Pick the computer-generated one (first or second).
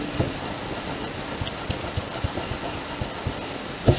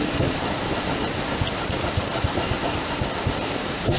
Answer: second